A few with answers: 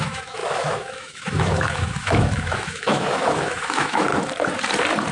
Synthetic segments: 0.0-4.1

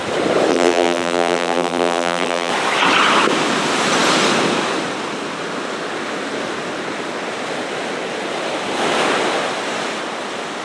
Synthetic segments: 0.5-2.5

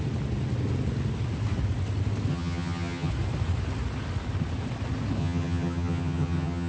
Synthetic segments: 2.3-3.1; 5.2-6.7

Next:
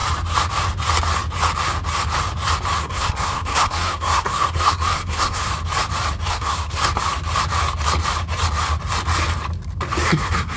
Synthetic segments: 2.8-5.5; 6.3-6.8; 10.1-10.6

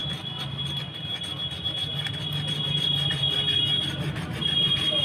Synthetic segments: 0.7-1.1; 4.1-5.0